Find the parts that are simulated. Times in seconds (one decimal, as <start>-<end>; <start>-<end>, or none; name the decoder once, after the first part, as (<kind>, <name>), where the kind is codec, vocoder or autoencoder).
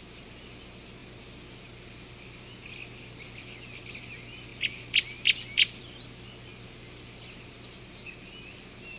none